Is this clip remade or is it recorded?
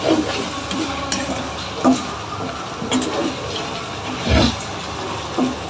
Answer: recorded